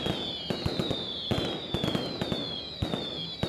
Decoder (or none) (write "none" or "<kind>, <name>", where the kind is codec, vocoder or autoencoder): none